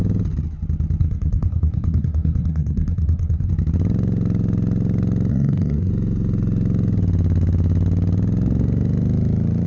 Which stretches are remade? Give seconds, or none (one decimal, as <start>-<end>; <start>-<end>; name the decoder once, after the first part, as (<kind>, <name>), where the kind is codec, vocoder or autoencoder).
1.0-3.5 (codec, SNAC); 5.3-5.9